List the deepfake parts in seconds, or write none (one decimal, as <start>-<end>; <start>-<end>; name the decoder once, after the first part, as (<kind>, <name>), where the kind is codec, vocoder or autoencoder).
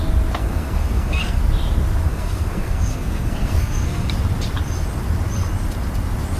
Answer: 0.4-1.4 (codec, SNAC); 2.1-4.1